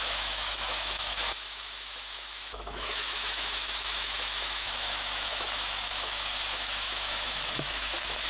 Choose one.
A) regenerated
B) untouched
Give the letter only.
A